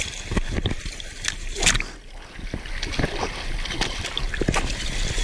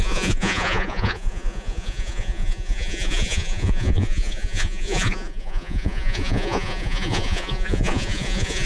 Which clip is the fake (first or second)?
second